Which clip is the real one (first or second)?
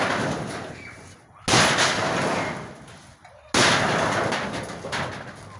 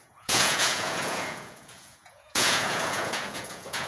first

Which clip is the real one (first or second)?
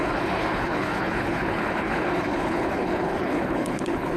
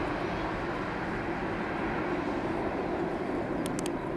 second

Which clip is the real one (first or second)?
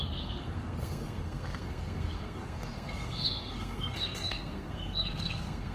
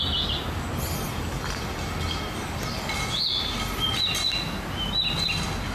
second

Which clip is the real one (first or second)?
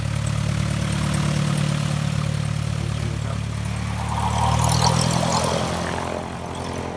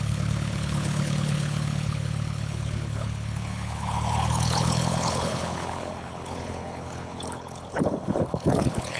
first